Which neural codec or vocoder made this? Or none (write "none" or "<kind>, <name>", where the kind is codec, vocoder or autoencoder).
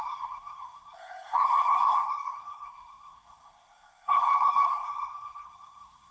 codec, SNAC